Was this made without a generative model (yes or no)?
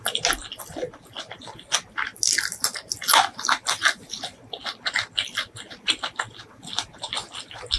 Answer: yes